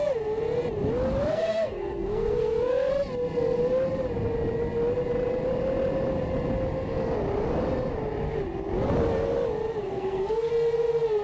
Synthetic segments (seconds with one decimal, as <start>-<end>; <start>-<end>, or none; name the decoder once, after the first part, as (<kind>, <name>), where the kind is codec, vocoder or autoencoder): 1.3-2.9 (codec, SNAC); 9.8-10.5